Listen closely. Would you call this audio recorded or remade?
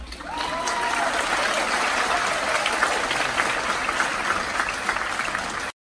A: recorded